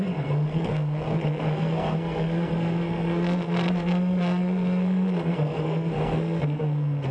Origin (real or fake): fake